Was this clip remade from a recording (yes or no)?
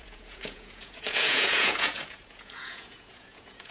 yes